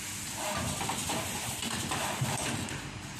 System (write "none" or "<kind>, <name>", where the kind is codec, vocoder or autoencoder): none